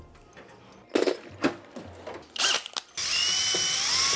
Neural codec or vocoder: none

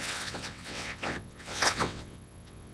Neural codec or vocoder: vocoder, WaveNeXt